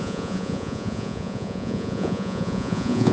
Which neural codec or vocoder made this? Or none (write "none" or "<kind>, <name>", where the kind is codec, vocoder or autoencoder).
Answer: vocoder, Vocos